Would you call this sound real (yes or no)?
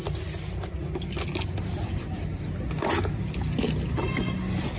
yes